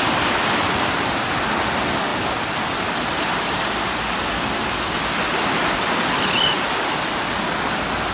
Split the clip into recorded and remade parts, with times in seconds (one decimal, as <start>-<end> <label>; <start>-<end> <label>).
0.0-8.1 recorded